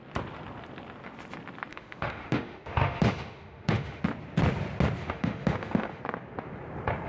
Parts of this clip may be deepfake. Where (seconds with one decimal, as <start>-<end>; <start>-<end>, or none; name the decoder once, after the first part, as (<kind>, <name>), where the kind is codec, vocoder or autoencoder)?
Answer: 1.7-4.0 (autoencoder, DAC-VAE); 5.0-6.0